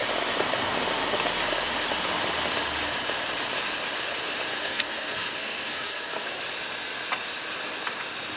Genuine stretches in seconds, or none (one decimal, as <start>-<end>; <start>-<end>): 0.0-4.5; 6.4-8.4

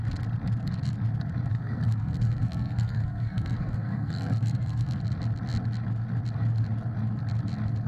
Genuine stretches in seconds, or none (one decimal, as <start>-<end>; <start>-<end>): 0.0-1.5; 5.0-7.9

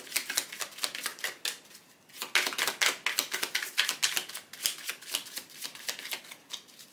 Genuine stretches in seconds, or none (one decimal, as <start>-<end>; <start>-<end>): 0.0-6.9

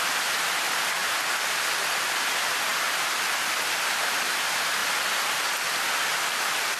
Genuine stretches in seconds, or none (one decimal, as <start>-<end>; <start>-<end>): 0.0-6.8

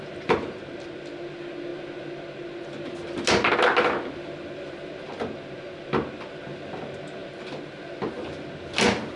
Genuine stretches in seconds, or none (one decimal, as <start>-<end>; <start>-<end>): 0.0-9.2

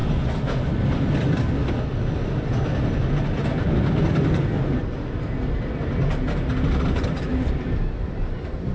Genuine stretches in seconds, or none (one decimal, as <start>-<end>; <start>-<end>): 0.0-7.3

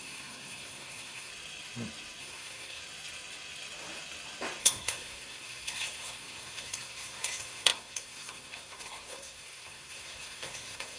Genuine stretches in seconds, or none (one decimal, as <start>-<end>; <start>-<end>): 1.3-2.2; 2.8-4.6